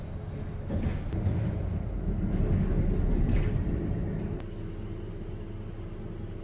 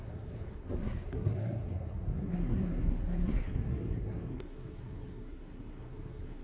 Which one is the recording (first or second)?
first